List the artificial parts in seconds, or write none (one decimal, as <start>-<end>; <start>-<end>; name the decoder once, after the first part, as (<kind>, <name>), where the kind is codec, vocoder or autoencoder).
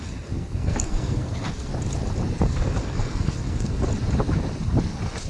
0.0-1.7 (codec, SNAC); 2.4-3.9